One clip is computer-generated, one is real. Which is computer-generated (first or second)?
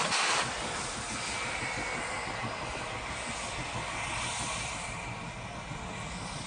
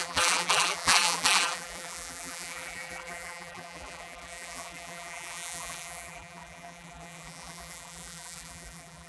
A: second